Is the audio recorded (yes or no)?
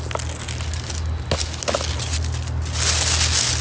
yes